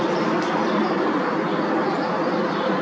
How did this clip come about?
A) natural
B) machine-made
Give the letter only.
A